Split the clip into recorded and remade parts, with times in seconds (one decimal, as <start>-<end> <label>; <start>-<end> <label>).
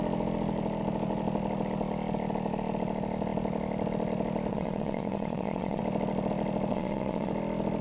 0.0-4.5 recorded; 4.5-5.8 remade; 5.8-6.7 recorded; 6.7-7.3 remade; 7.3-7.8 recorded